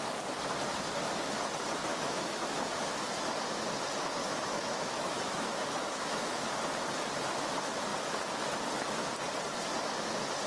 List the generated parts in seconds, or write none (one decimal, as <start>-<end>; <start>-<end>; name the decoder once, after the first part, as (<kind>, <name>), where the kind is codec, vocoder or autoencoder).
1.9-3.0 (autoencoder, DAC-VAE); 4.2-6.5